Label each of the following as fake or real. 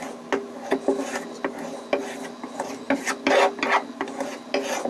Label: real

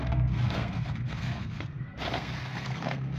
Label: fake